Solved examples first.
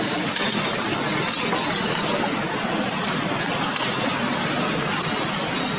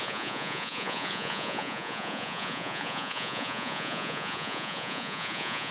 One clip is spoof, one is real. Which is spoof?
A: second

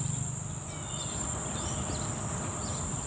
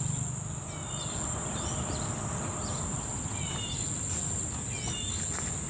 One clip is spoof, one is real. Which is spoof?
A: first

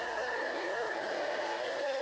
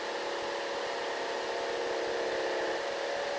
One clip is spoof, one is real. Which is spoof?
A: first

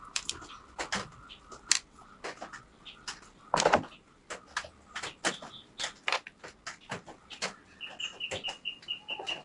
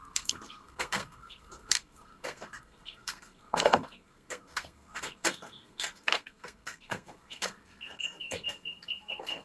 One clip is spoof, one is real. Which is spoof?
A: second